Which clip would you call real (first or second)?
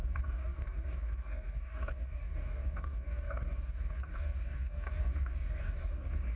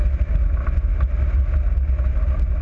second